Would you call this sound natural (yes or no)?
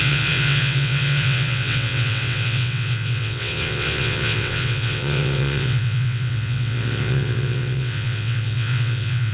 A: no